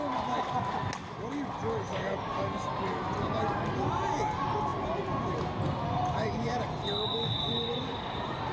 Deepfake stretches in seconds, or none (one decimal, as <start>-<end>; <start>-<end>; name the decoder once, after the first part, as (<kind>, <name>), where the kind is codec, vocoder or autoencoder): none